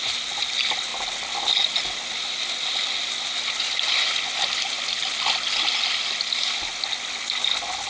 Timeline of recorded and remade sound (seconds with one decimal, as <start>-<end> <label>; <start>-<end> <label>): 0.0-7.9 recorded